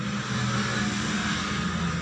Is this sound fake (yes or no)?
no